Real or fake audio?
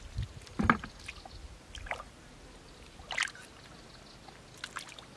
real